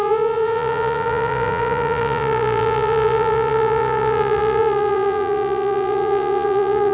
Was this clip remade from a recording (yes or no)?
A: yes